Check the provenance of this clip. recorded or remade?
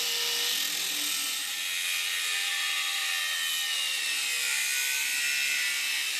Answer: recorded